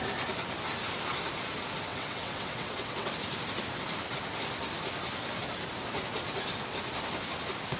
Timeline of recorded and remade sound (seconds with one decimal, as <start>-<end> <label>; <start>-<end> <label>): 0.0-1.9 recorded; 1.9-3.1 remade; 3.1-7.8 recorded